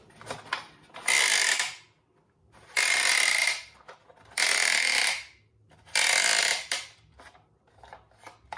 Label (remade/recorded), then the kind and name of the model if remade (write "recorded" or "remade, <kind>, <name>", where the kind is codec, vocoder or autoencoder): recorded